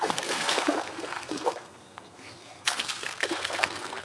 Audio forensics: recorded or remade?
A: remade